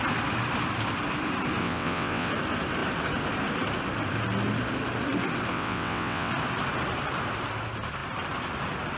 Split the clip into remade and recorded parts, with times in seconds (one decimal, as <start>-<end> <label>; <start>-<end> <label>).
0.0-1.6 recorded; 1.6-2.3 remade; 2.3-5.5 recorded; 5.5-6.3 remade; 6.3-9.0 recorded